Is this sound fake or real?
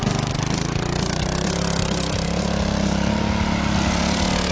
real